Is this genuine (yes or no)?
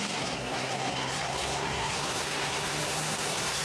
no